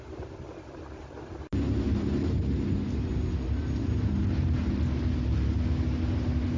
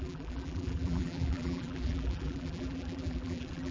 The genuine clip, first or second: first